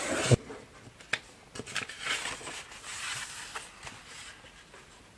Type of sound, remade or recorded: recorded